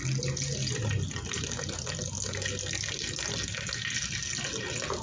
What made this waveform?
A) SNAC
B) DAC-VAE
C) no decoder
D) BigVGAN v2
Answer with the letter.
C